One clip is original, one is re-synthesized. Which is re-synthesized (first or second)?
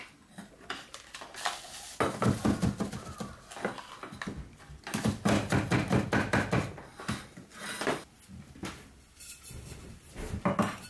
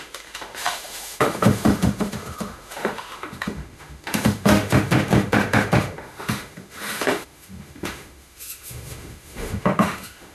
second